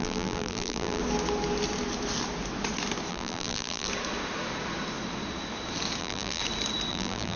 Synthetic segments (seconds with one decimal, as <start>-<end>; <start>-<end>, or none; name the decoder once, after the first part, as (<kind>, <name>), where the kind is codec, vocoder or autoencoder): 0.0-1.0 (vocoder, BigVGAN v2); 3.1-3.9; 6.0-6.4; 6.9-7.4